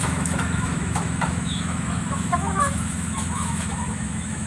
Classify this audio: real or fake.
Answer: fake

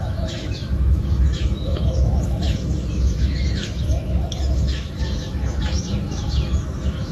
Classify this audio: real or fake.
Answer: fake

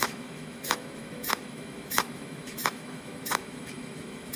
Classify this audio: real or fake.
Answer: fake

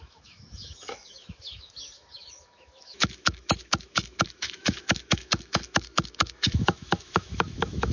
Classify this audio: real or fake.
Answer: fake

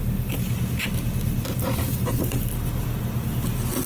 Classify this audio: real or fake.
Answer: real